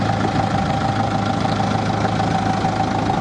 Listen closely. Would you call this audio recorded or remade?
recorded